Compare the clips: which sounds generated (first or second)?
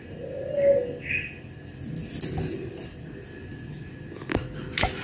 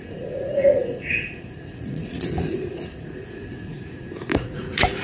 second